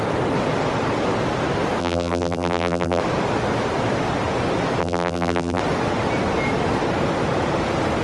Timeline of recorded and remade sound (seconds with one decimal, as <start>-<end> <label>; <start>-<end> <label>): 0.0-1.8 recorded; 1.8-3.0 remade; 3.0-4.8 recorded; 4.8-5.6 remade; 5.6-8.0 recorded